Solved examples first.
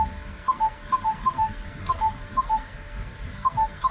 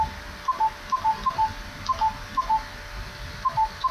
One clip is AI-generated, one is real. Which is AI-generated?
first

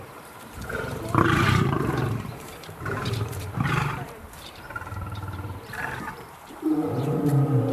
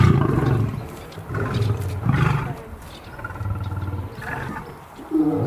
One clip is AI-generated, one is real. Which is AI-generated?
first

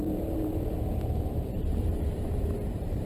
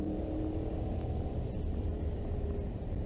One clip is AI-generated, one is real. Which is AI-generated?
first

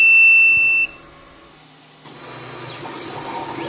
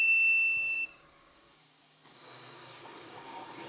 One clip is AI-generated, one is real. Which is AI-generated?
second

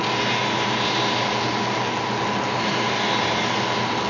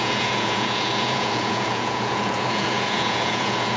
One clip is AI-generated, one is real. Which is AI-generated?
second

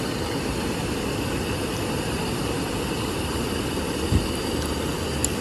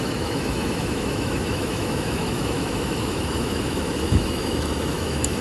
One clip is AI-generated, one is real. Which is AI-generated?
second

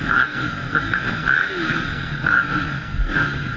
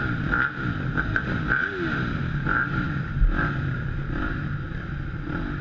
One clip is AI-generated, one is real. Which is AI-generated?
first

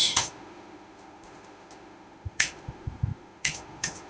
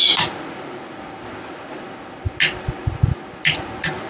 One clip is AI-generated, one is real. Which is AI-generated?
first